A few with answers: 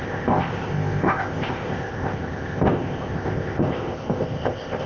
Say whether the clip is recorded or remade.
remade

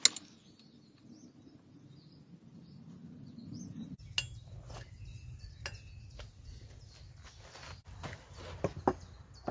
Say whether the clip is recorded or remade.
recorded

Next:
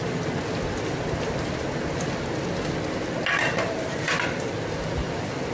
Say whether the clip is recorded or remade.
recorded